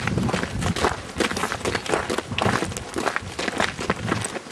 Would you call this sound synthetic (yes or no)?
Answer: no